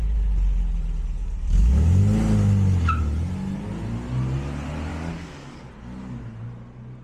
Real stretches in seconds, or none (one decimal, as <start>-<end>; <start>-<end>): 0.0-1.2; 2.0-4.9; 5.7-7.0